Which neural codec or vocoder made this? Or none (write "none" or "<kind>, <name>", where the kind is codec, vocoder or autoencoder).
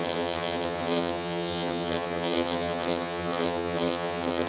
vocoder, HiFi-GAN